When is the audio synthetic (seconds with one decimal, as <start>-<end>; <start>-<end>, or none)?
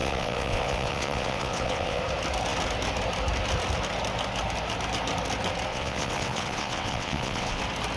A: 0.0-2.0; 5.7-7.6